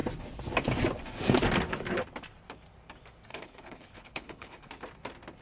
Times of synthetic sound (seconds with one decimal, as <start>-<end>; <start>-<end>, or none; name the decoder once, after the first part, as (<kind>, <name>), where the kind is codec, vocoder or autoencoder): 3.3-4.7 (codec, HILCodec)